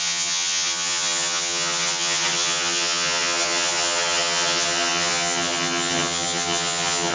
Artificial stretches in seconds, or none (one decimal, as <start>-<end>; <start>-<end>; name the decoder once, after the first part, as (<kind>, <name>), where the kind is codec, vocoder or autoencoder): 0.0-7.1 (vocoder, HiFi-GAN)